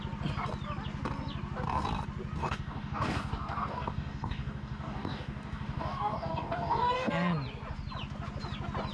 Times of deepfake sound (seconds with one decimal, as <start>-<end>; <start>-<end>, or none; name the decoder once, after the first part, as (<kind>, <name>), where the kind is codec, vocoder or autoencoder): 2.4-7.1 (codec, DAC)